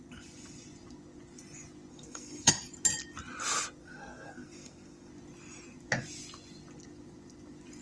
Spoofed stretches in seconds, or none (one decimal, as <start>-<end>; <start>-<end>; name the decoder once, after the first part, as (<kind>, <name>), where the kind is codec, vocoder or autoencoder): 1.9-2.5 (codec, SNAC); 3.8-5.1